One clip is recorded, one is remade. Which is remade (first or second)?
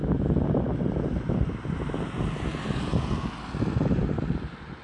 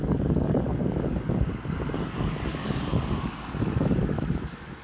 second